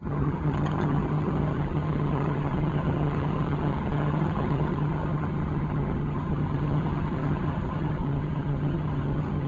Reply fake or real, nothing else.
fake